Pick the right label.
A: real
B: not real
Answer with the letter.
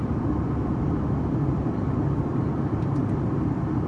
B